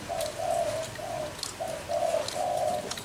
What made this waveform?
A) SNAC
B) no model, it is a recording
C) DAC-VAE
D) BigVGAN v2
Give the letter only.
B